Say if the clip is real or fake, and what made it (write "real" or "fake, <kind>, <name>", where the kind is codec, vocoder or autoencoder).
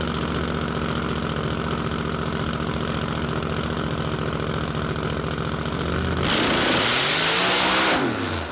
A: real